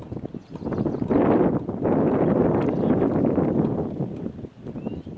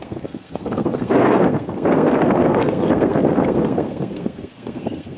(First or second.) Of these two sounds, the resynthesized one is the second